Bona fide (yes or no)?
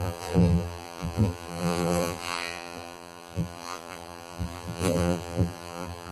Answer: no